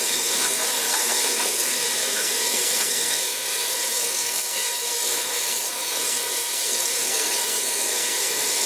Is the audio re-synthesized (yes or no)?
yes